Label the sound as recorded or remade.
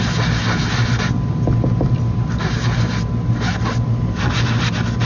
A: recorded